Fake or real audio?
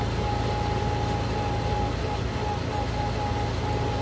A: real